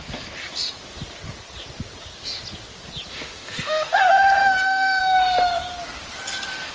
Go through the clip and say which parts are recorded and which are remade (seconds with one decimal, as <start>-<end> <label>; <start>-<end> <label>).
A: 0.0-3.1 recorded; 3.1-4.0 remade; 4.0-4.4 recorded; 4.4-5.0 remade; 5.0-6.7 recorded